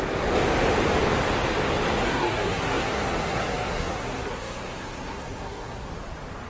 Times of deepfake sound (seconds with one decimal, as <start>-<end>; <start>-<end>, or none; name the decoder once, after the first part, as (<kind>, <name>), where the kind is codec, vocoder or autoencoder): 2.0-5.9 (codec, SNAC)